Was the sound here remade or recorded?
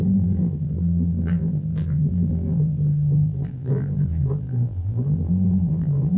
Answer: remade